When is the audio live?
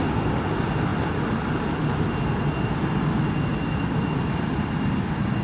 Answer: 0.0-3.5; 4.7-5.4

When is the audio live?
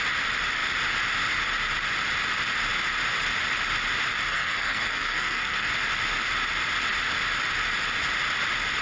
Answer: 0.0-4.3; 5.7-8.8